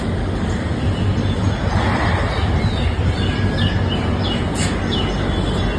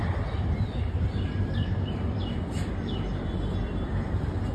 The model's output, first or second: second